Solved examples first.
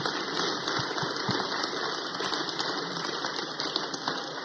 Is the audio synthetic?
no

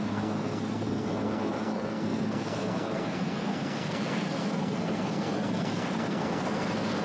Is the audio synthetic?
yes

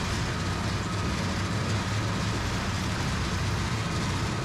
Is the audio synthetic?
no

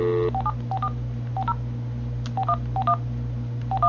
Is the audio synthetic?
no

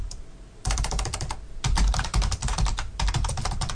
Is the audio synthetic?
yes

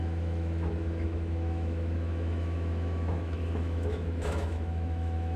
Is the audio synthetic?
yes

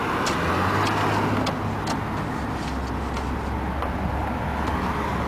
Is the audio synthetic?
no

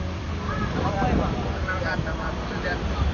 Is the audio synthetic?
yes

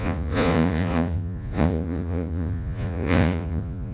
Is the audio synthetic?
yes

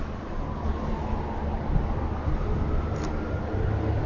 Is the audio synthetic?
no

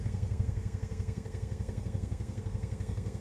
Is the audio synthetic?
yes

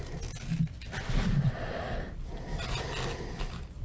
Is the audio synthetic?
no